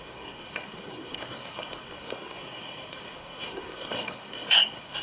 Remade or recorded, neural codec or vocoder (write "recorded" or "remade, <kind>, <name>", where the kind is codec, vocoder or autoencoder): remade, codec, SNAC